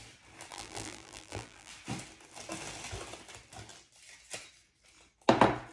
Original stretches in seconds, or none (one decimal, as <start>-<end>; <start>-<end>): 0.0-0.5; 1.7-5.7